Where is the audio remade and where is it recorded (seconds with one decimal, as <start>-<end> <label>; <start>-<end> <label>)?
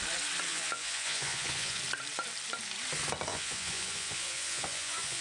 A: 0.0-0.5 recorded; 0.5-1.8 remade; 1.8-3.3 recorded; 3.3-5.2 remade